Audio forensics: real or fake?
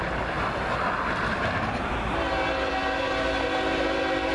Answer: real